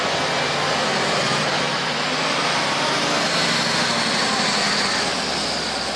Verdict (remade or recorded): recorded